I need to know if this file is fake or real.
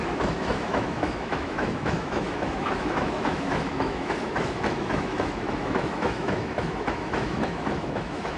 fake